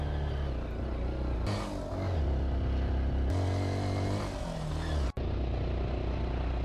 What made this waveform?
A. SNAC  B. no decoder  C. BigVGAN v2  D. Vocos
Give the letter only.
B